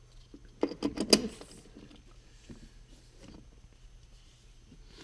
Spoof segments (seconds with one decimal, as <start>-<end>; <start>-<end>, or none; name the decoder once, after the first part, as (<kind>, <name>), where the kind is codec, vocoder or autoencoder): none

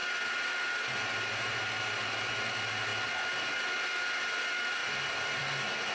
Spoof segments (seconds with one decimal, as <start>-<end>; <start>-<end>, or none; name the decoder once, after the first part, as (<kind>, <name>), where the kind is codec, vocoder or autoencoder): 4.8-5.9 (vocoder, BigVGAN v2)

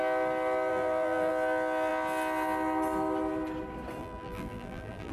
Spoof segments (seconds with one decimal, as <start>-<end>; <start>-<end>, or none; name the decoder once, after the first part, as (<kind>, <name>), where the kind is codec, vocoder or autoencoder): 0.7-1.3 (vocoder, BigVGAN v2); 4.0-5.1

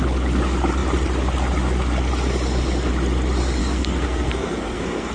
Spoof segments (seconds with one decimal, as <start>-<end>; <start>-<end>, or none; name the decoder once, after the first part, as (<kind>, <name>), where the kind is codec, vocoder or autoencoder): 3.6-5.1 (codec, SNAC)

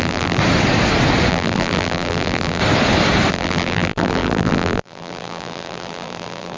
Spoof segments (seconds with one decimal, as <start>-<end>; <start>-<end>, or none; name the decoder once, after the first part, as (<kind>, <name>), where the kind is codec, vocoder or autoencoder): 0.0-0.4 (vocoder, BigVGAN v2); 1.3-2.6; 3.3-6.6

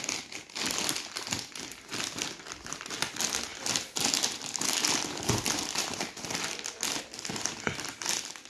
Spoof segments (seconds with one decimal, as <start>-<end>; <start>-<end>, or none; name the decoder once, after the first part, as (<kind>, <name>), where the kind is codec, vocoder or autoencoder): none

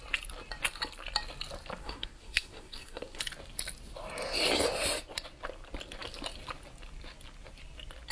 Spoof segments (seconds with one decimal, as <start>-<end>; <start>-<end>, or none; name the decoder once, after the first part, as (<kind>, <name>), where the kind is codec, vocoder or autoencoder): 1.8-3.2 (codec, SNAC)

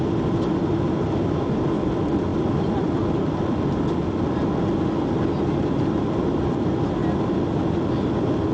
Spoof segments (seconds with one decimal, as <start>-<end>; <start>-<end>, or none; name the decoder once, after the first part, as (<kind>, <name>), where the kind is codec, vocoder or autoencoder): none